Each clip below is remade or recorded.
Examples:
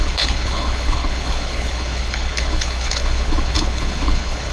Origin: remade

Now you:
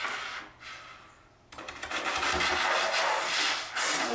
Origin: recorded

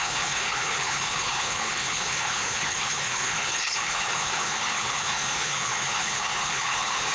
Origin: remade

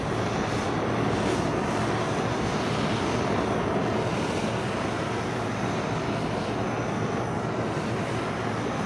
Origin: recorded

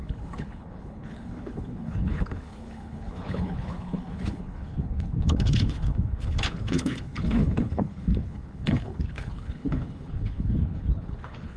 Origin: remade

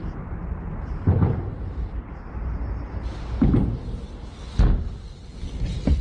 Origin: recorded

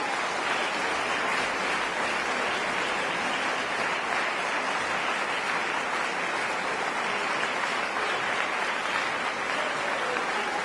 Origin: recorded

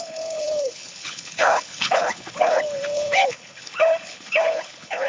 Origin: remade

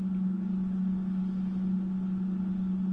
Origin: recorded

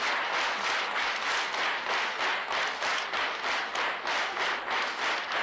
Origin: recorded